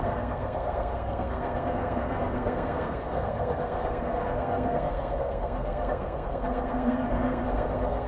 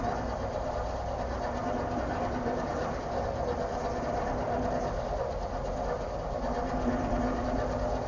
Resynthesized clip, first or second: first